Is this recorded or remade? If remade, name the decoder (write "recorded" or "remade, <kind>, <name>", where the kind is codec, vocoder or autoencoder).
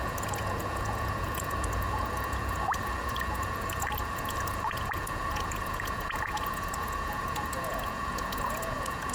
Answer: remade, vocoder, Vocos